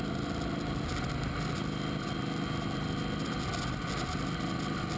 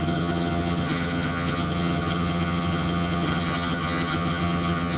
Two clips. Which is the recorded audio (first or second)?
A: first